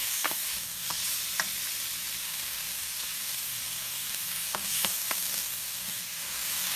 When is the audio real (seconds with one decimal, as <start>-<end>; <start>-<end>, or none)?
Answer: 1.0-2.2